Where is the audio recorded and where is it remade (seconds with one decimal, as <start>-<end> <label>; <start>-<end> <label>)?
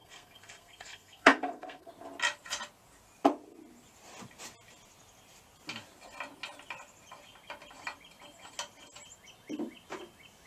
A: 0.0-1.9 remade; 1.9-10.5 recorded